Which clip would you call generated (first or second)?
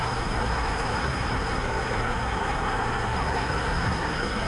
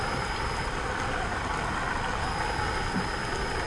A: first